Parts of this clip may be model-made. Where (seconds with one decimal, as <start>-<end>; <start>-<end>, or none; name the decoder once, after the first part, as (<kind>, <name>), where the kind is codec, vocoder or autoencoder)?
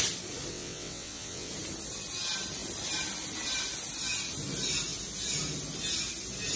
0.5-1.5 (vocoder, WaveNeXt)